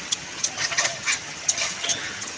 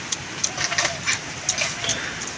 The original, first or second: second